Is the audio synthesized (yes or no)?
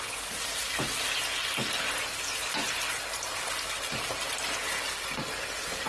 no